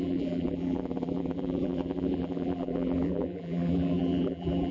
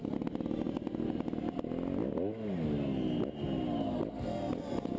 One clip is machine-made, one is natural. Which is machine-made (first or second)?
first